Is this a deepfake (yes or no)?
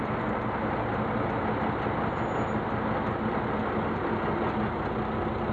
no